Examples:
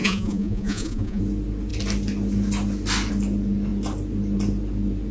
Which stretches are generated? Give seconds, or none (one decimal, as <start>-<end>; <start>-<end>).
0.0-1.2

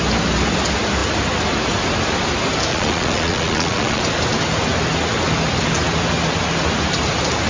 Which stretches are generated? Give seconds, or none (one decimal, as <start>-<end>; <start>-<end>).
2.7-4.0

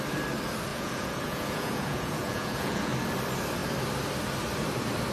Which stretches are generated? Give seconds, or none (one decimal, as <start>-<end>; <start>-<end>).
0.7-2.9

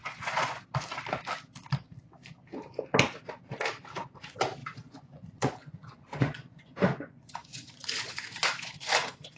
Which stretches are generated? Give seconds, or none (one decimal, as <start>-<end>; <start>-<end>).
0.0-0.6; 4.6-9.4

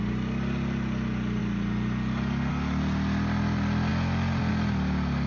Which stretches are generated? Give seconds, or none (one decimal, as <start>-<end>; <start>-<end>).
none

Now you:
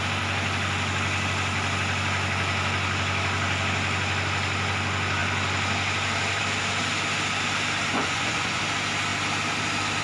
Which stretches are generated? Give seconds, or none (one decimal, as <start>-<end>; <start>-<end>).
7.9-8.6